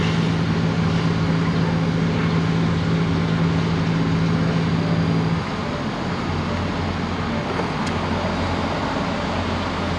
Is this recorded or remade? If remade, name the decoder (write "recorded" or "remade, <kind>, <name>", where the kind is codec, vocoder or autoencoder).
recorded